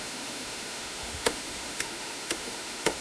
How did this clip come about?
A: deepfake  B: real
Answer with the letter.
A